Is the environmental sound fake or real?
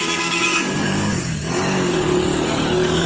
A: fake